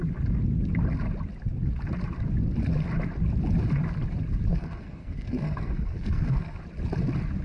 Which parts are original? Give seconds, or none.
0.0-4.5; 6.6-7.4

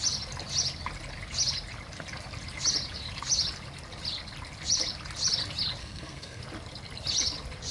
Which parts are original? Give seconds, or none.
0.0-5.8; 6.4-7.7

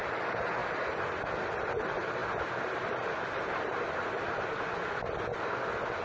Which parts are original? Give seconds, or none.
0.0-6.0

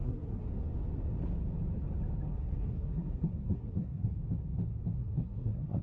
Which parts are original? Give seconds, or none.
0.5-2.3; 4.2-5.0

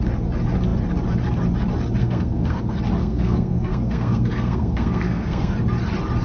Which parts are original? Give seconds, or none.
0.0-2.0; 2.6-3.0; 5.5-6.2

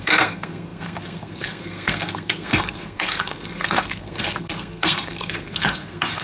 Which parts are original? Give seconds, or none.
none

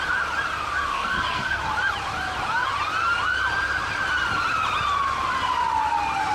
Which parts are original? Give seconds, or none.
0.0-0.9; 1.6-6.3

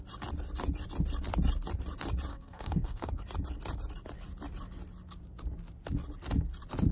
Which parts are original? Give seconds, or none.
0.0-2.3; 3.2-6.9